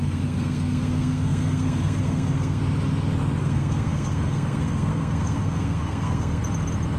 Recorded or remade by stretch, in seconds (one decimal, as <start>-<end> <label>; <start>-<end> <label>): 0.0-2.6 remade; 2.6-3.4 recorded; 3.4-6.4 remade; 6.4-7.0 recorded